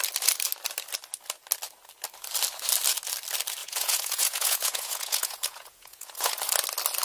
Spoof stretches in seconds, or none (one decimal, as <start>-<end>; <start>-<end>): 3.6-6.4